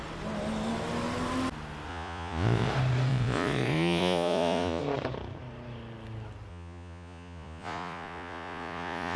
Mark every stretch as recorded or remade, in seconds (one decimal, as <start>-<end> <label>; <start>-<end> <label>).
0.0-1.9 recorded; 1.9-2.7 remade; 2.7-3.1 recorded; 3.1-4.8 remade; 4.8-6.5 recorded; 6.5-9.2 remade